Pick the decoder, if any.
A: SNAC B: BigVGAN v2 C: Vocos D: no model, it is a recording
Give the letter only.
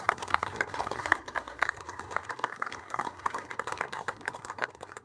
A